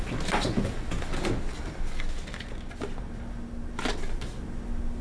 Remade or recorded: recorded